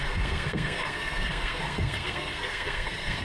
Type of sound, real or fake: fake